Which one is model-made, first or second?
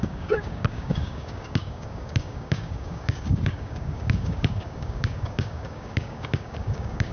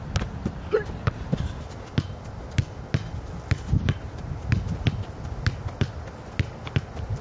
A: first